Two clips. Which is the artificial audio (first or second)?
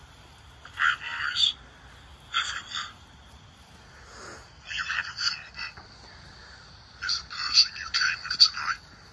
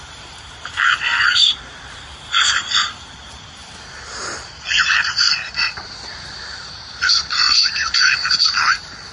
second